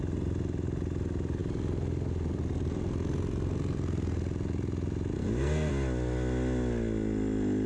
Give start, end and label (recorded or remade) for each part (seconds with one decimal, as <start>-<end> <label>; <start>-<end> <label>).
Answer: 0.0-5.2 recorded; 5.2-5.7 remade; 5.7-7.7 recorded